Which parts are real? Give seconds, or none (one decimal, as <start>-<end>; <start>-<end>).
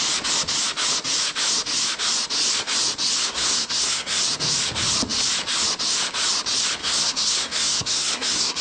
0.0-3.2; 4.2-6.8